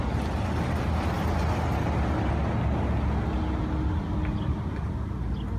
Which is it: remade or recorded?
recorded